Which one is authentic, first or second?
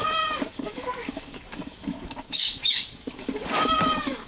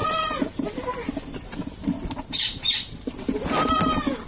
second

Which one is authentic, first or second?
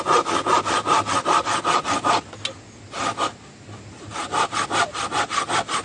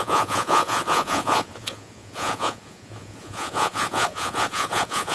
first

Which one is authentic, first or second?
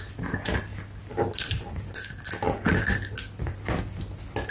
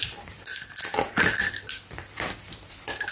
first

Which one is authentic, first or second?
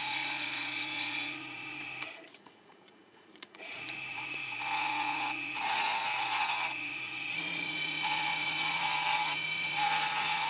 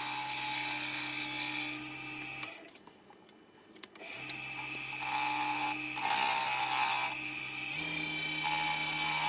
second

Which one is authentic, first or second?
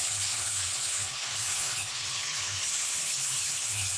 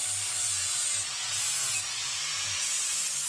second